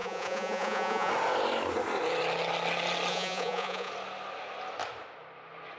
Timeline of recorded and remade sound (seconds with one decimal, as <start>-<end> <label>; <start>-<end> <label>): 0.0-1.1 remade; 1.1-3.1 recorded; 3.1-3.9 remade; 3.9-5.8 recorded